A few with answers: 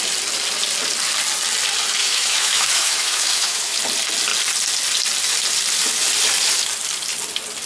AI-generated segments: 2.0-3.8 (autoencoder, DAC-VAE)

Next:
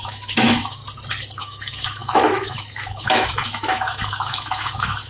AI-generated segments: 0.0-0.8 (autoencoder, DAC-VAE); 1.4-5.1

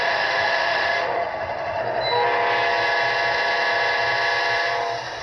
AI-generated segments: 0.0-1.8 (autoencoder, DAC-VAE)

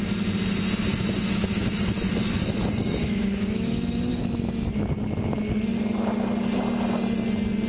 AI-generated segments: 0.9-4.2 (autoencoder, DAC-VAE)